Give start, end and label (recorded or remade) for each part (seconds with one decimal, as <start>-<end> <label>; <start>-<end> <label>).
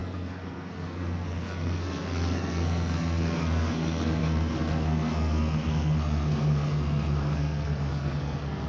0.0-8.7 remade